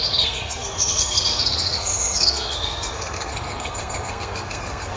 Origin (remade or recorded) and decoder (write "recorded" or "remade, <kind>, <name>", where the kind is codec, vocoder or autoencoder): remade, codec, SNAC